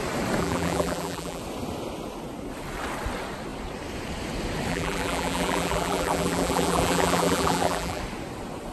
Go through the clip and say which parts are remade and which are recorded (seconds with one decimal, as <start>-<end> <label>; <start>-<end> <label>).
0.0-0.4 recorded; 0.4-1.4 remade; 1.4-4.7 recorded; 4.7-8.0 remade; 8.0-8.7 recorded